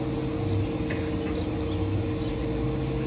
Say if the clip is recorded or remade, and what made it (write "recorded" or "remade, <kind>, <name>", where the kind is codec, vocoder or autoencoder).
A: recorded